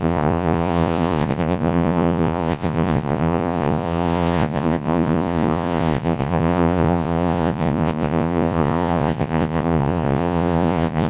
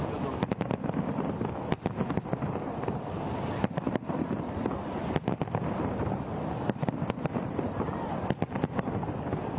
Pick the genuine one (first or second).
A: second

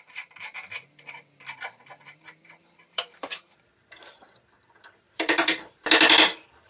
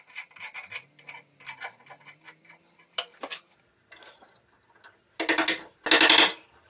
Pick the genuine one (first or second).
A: second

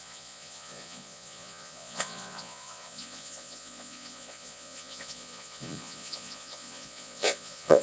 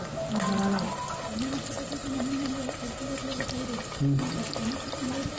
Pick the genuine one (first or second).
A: second